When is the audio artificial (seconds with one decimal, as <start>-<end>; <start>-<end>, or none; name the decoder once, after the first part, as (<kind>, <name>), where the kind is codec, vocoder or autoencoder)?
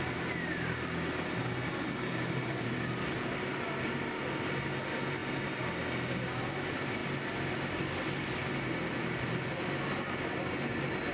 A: none